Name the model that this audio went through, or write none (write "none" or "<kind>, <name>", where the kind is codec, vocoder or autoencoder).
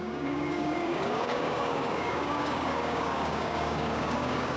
codec, DAC